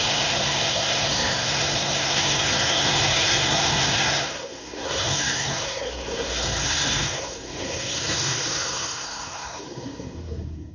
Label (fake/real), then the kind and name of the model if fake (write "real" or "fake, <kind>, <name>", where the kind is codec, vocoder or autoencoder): fake, codec, SNAC